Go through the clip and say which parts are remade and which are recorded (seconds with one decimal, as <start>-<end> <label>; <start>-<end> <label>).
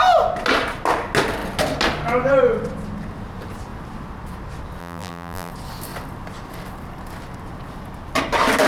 0.0-4.8 recorded; 4.8-5.5 remade; 5.5-8.7 recorded